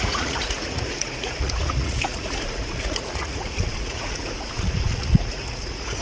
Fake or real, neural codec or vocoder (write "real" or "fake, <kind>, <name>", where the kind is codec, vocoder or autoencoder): fake, vocoder, Vocos